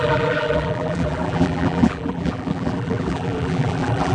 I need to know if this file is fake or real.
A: fake